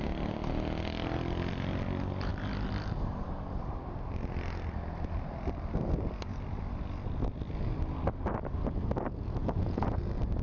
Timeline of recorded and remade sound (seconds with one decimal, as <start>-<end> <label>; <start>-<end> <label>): 0.0-9.4 recorded; 9.4-10.0 remade; 10.0-10.4 recorded